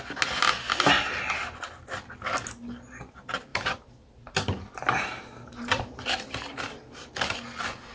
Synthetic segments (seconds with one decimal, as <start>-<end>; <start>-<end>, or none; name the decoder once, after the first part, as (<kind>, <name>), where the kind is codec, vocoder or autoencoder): 3.5-6.8 (vocoder, BigVGAN v2)

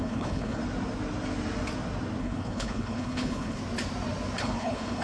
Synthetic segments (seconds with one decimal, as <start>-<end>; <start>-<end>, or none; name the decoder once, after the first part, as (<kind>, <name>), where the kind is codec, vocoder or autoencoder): 0.0-0.6 (codec, HILCodec); 2.2-3.6; 4.4-5.0

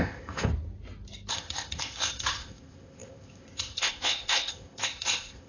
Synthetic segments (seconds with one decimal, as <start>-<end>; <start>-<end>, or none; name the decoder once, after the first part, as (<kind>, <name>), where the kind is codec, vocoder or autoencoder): 0.0-0.5 (codec, ZipCodec); 1.3-5.5